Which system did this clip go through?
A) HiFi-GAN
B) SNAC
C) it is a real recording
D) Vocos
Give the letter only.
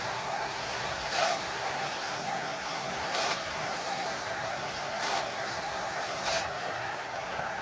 B